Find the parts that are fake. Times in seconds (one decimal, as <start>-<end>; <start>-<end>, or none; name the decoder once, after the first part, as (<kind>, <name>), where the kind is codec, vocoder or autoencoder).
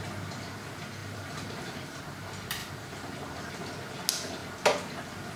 1.0-2.0 (vocoder, BigVGAN v2); 2.6-3.6